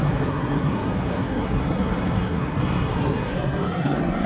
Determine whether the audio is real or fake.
fake